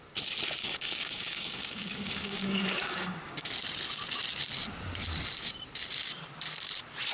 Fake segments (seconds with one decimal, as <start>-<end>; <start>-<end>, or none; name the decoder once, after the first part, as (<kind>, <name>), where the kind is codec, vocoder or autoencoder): 0.6-3.5 (codec, DAC)